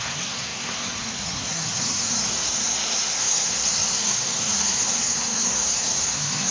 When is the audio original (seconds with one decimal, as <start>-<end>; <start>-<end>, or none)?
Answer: none